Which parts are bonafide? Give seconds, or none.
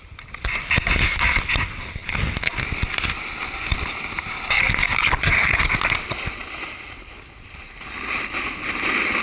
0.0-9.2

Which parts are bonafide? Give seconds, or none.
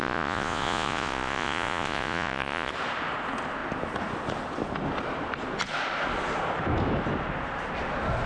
2.7-8.3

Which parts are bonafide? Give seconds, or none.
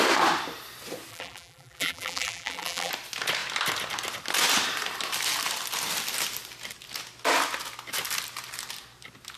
0.0-1.1; 2.9-9.4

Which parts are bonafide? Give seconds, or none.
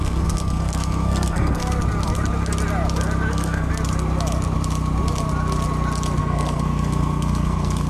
1.6-3.3; 3.7-6.2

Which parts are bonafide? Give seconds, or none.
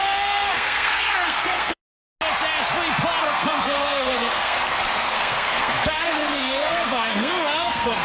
1.8-3.2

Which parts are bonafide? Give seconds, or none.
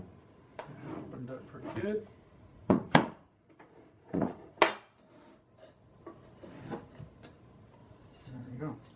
0.0-0.5; 4.6-7.8; 8.6-9.0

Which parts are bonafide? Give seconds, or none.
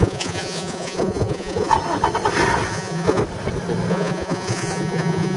1.7-2.7; 3.2-3.9